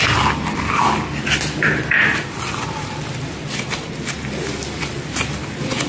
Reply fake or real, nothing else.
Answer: real